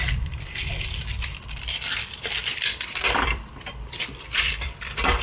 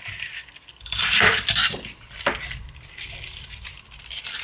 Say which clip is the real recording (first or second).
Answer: second